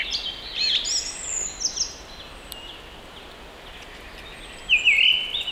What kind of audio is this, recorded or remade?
recorded